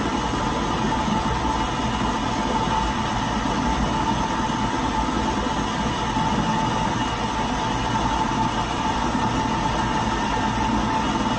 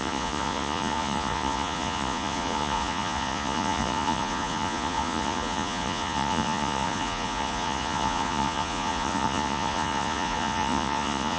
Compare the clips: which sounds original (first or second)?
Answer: first